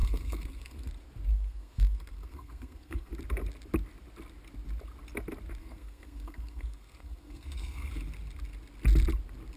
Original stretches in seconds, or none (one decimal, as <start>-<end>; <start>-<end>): 0.9-1.3; 3.1-5.6; 7.9-9.6